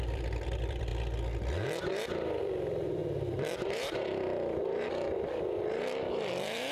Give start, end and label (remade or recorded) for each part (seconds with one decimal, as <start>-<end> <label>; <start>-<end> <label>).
0.0-0.9 remade; 0.9-2.4 recorded; 2.4-6.7 remade